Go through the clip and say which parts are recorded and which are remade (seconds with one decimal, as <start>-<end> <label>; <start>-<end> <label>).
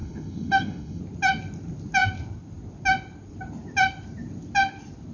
0.0-1.0 remade; 1.0-5.1 recorded